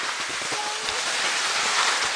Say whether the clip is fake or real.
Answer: real